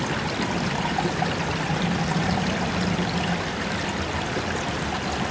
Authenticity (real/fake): real